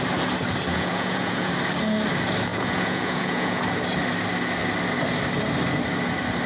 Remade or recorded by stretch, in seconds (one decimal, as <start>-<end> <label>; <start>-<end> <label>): 0.0-0.7 recorded; 0.7-1.5 remade; 1.5-2.5 recorded; 2.5-3.6 remade; 3.6-6.5 recorded